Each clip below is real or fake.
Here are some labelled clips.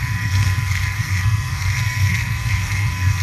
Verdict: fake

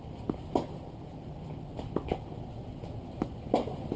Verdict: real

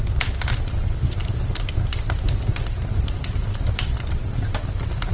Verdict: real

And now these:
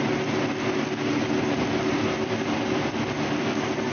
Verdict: real